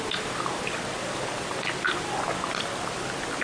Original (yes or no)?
yes